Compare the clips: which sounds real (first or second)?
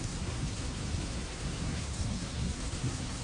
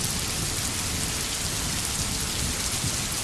second